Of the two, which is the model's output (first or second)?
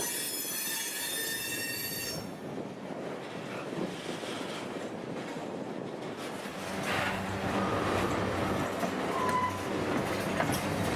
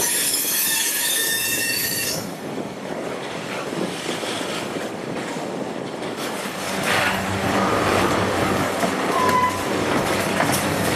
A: second